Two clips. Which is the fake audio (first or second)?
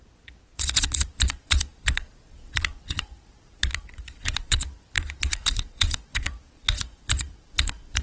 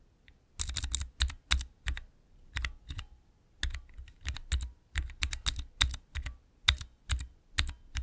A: first